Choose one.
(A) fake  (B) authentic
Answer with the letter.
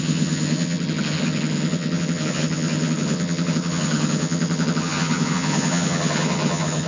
A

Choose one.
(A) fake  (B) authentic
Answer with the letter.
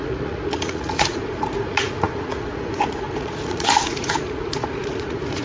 A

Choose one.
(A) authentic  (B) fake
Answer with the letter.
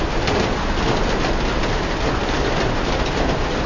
A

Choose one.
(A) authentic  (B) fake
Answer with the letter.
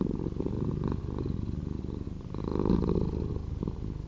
A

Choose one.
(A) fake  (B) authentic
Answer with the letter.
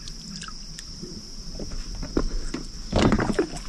B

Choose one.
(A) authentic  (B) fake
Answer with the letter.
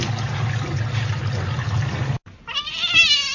A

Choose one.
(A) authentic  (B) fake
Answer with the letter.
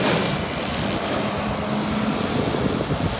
A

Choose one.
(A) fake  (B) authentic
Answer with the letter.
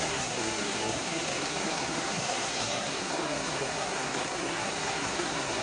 A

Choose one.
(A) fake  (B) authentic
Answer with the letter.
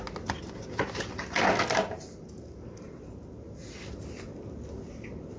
B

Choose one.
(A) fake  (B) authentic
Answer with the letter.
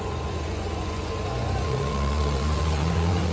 A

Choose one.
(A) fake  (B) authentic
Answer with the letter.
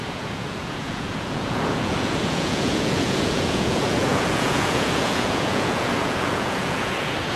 A